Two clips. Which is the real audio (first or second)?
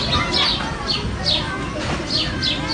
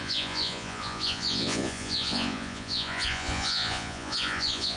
first